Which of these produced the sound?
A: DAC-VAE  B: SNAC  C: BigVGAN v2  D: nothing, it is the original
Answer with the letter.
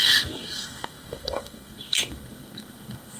B